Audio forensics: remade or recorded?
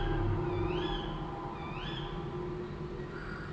recorded